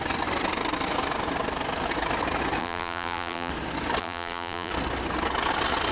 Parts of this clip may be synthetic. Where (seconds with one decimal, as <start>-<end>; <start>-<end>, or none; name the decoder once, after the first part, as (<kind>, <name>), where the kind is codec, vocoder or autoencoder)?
2.6-3.5 (vocoder, BigVGAN v2); 4.0-4.7